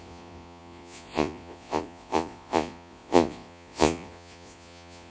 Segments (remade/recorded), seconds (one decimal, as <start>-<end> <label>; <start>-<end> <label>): 0.0-5.1 remade